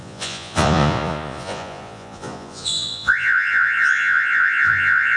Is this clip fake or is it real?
fake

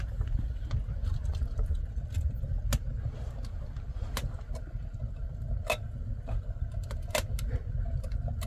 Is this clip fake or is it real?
real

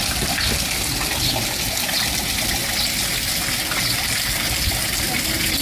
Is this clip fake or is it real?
real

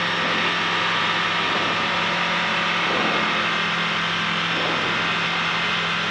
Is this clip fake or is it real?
real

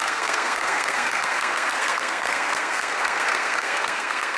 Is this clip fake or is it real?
fake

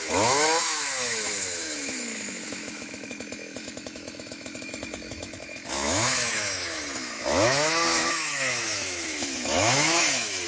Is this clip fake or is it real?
fake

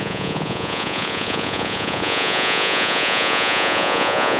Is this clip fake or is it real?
fake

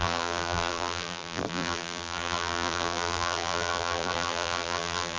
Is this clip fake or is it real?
fake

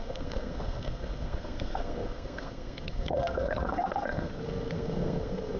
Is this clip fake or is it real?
fake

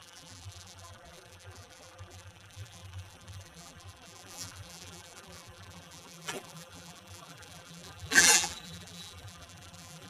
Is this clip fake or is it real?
fake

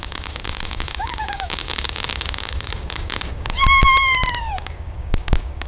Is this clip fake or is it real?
fake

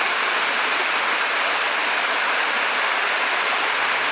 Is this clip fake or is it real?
real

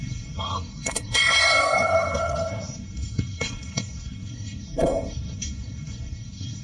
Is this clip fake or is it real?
fake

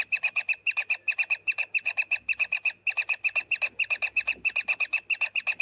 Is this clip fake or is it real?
real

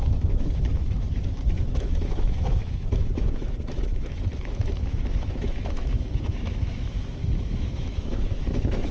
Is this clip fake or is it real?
fake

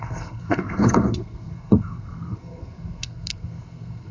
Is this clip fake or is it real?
fake